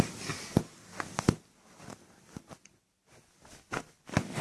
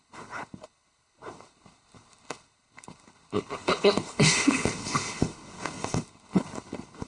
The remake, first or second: second